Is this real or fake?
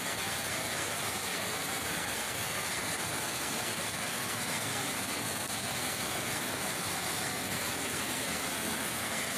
fake